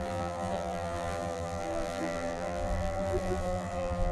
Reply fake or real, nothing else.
fake